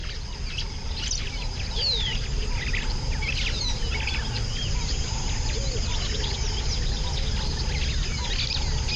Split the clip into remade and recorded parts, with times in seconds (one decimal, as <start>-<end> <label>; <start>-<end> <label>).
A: 0.0-9.0 recorded